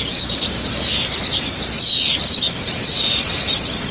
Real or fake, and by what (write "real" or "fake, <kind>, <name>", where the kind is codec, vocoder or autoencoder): fake, vocoder, BigVGAN v2